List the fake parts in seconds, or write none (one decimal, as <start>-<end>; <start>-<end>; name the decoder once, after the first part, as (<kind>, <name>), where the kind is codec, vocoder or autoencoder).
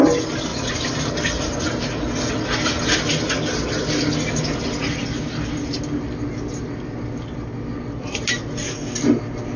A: none